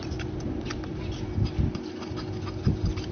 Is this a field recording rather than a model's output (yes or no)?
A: yes